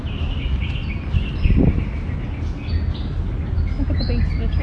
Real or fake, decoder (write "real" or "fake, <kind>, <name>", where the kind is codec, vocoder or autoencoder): real